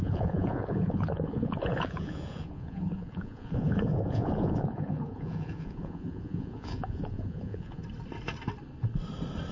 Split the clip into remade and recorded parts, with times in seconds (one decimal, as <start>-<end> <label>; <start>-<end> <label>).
0.0-7.8 remade; 7.8-9.5 recorded